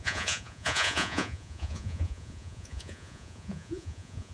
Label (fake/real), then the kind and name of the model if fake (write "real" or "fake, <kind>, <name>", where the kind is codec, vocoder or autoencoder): fake, vocoder, Vocos